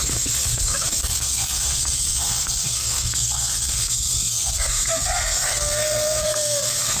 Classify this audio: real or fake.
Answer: fake